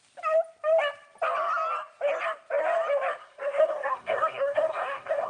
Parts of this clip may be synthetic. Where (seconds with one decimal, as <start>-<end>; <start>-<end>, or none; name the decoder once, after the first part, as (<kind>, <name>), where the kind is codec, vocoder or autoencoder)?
3.2-5.3 (codec, SNAC)